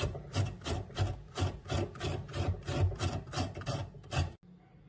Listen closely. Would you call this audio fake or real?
real